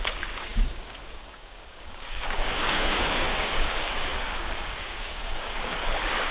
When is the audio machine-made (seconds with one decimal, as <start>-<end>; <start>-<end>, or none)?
0.0-6.3